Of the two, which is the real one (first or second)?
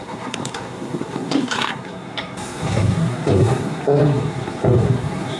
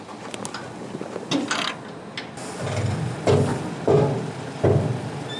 second